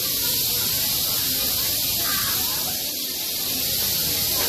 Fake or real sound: real